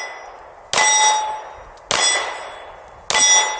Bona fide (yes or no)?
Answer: yes